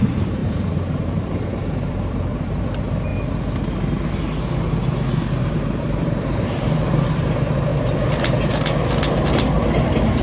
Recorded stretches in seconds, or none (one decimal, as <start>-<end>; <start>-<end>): 3.1-5.4; 7.7-9.7